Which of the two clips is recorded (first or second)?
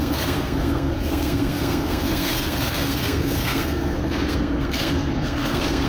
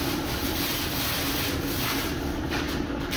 second